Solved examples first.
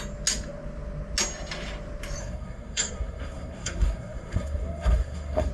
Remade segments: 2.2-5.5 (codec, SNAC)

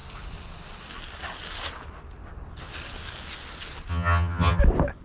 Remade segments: 3.9-4.6 (vocoder, HiFi-GAN)

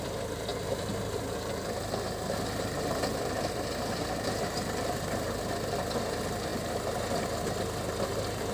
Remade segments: 0.5-5.4 (vocoder, BigVGAN v2); 6.5-7.5